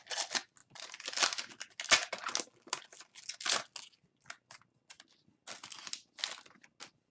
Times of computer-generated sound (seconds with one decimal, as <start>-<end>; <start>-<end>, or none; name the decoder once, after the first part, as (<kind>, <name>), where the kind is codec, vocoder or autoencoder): none